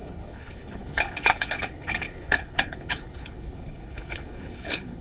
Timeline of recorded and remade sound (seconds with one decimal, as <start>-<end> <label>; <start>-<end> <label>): 0.0-5.0 remade